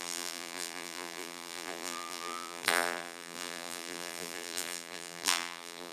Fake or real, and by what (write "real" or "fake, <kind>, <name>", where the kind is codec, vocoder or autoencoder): fake, vocoder, BigVGAN v2